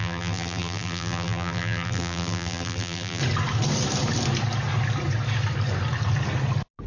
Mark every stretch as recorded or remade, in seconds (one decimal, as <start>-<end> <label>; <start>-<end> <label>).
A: 0.0-3.2 remade; 3.2-6.9 recorded